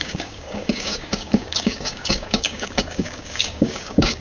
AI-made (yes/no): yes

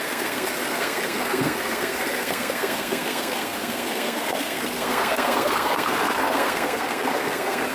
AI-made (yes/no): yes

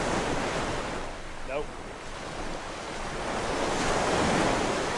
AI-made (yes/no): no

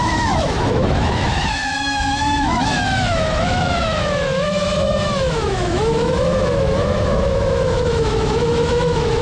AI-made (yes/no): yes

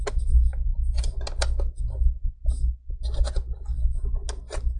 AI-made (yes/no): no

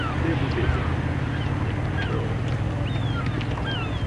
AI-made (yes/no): no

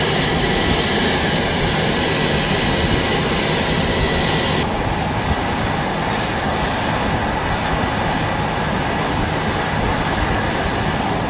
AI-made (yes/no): no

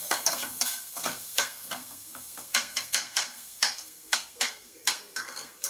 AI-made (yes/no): yes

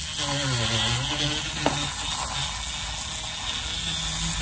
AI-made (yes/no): no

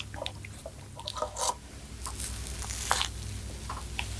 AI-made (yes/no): no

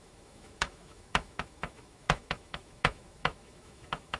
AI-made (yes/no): yes